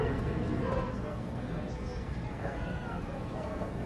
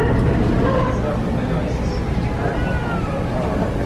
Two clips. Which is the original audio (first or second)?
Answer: second